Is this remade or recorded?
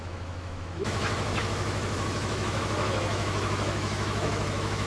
remade